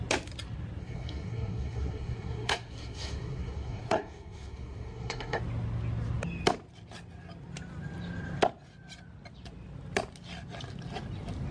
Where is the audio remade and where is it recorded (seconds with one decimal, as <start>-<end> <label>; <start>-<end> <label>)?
0.0-0.8 recorded; 0.8-5.4 remade; 5.4-11.5 recorded